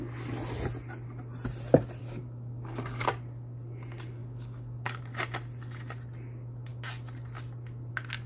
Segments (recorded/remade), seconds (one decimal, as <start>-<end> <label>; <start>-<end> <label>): 0.0-2.0 recorded; 2.0-3.1 remade; 3.1-4.2 recorded; 4.2-5.0 remade; 5.0-8.3 recorded